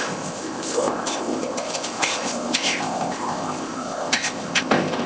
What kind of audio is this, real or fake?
fake